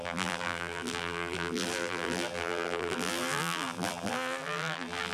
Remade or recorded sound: remade